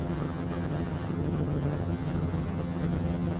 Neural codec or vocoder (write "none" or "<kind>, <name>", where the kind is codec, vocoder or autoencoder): vocoder, HiFi-GAN